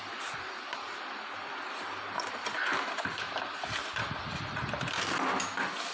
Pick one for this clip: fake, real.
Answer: real